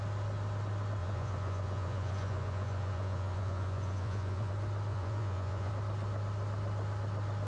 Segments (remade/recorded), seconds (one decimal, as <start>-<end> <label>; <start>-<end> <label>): 0.0-1.0 recorded; 1.0-4.5 remade; 4.5-4.9 recorded; 4.9-5.7 remade; 5.7-7.5 recorded